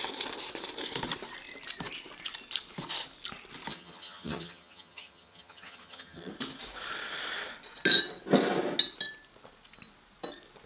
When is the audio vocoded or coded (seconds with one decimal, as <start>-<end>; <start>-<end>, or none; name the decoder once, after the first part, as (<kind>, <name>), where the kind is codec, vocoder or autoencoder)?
3.7-6.3 (vocoder, HiFi-GAN)